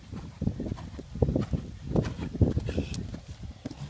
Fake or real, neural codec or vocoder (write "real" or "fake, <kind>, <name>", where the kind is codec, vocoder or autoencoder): real